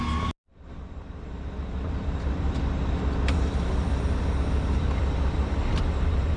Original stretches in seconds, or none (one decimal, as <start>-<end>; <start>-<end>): 0.0-6.4